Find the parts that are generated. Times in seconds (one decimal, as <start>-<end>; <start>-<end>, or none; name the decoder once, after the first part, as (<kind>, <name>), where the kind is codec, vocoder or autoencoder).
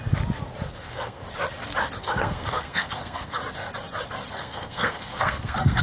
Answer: 0.7-1.2 (codec, SNAC); 2.0-3.4; 4.3-5.8